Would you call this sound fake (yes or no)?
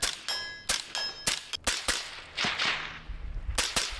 no